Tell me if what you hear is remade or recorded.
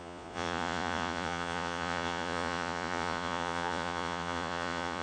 remade